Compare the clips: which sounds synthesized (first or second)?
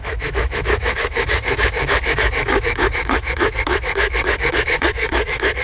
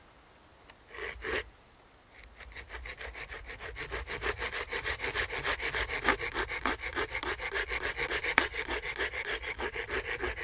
first